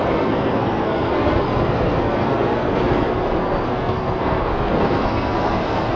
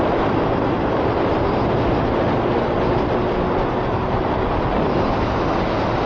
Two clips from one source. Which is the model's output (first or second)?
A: first